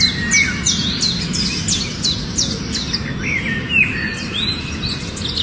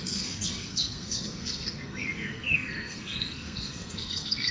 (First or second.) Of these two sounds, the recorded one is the first